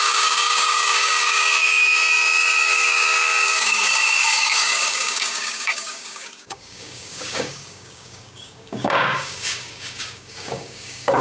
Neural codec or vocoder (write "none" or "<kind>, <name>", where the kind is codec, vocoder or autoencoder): codec, DAC